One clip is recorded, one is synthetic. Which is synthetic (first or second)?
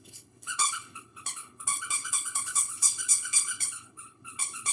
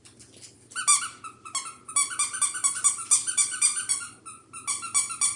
first